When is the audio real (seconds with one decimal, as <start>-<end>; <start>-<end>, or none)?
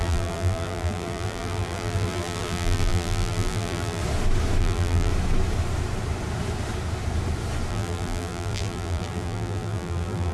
4.0-4.6; 5.1-7.7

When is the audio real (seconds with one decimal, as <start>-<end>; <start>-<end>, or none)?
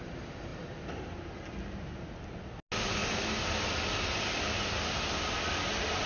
0.0-6.1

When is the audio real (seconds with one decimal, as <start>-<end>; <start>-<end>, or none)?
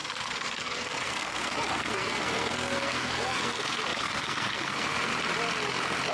5.1-6.1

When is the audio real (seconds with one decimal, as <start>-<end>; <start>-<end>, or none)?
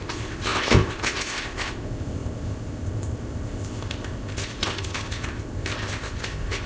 none